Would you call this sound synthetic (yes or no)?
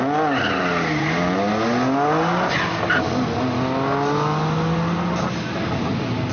no